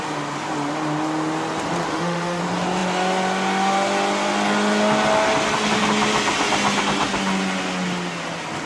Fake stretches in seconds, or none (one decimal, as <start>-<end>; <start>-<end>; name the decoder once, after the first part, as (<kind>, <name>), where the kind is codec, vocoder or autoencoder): 1.9-2.4 (autoencoder, DAC-VAE)